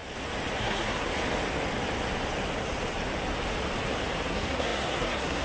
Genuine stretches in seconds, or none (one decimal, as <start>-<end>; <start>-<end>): 0.0-0.6; 1.1-4.3